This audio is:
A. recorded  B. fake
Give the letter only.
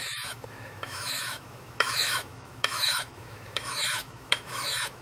B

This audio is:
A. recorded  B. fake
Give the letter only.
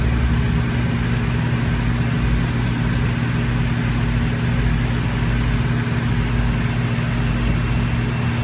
A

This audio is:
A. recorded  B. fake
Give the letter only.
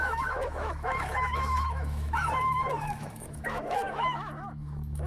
B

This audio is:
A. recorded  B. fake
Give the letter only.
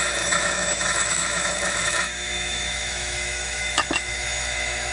B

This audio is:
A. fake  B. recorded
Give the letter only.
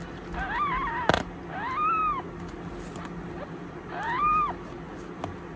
B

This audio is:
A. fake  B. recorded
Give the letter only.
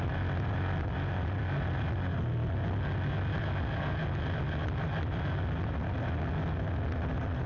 B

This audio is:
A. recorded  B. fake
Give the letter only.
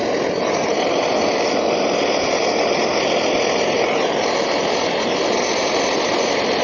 A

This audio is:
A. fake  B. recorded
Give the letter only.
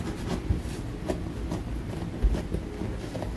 B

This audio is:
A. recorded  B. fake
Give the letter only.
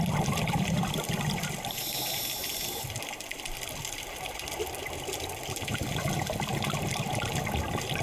A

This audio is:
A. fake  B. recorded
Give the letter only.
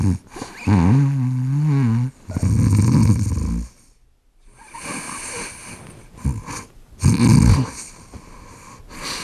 B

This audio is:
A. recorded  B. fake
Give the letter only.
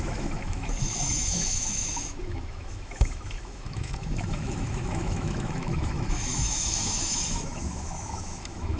B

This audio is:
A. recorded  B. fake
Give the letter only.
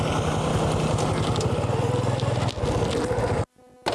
A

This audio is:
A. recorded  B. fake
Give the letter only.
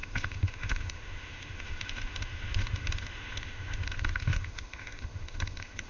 B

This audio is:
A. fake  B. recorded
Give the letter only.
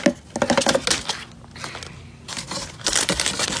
B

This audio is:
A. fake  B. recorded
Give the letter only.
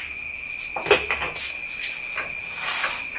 B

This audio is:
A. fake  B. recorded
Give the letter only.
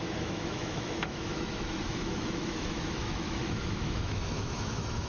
A